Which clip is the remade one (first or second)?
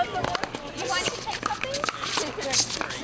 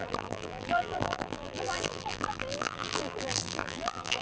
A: second